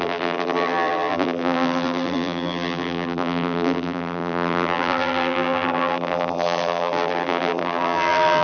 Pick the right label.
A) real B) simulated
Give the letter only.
B